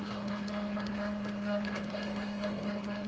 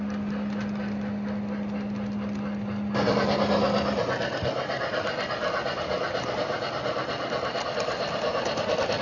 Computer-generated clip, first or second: first